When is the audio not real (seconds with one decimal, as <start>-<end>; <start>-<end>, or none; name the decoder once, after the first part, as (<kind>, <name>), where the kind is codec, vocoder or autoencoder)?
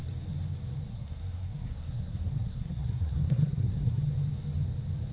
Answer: 0.9-4.0 (codec, SNAC)